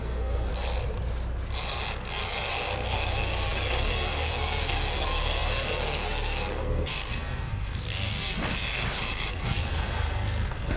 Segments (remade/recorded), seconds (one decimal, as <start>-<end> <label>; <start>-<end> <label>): 0.0-0.5 remade; 0.5-2.5 recorded; 2.5-8.4 remade; 8.4-9.3 recorded; 9.3-10.8 remade